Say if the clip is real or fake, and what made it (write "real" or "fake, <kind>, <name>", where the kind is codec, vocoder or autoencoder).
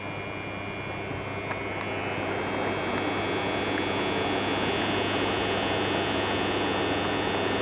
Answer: real